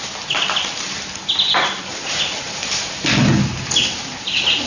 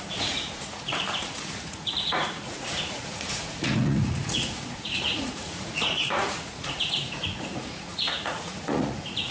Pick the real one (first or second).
first